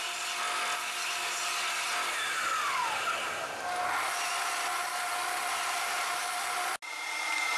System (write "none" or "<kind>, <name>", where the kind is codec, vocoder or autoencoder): none